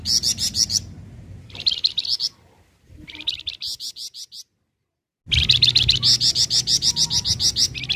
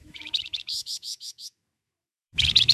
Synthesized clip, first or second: second